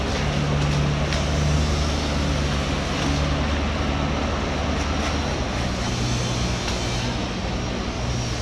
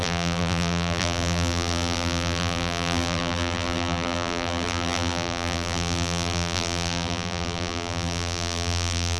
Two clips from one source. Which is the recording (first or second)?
first